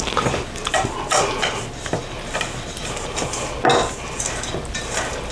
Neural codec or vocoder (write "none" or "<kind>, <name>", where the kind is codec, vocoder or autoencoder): none